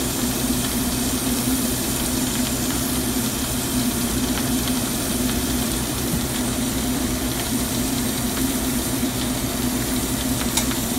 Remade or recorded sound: remade